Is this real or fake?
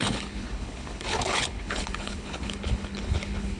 fake